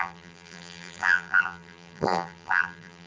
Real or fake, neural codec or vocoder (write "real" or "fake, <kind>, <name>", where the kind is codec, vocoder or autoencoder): fake, vocoder, BigVGAN v2